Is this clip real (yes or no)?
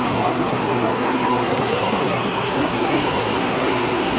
no